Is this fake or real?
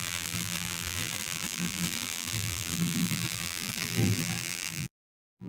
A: fake